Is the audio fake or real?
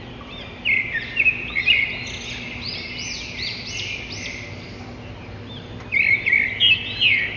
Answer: real